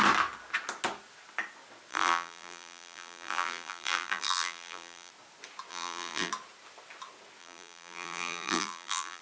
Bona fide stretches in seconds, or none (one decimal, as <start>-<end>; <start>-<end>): 0.0-1.9; 5.1-5.7; 6.3-7.4

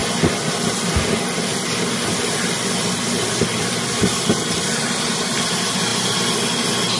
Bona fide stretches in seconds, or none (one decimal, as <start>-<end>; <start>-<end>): 0.0-7.0